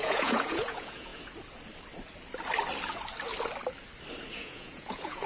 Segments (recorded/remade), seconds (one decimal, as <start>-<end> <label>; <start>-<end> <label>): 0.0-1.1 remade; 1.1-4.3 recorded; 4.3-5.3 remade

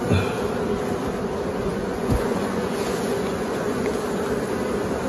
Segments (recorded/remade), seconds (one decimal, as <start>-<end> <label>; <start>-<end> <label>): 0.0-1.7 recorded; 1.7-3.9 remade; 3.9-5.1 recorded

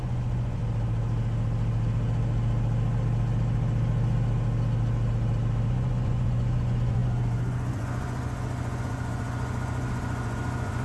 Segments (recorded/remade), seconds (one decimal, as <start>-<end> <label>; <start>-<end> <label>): 0.0-0.6 remade; 0.6-5.7 recorded; 5.7-10.8 remade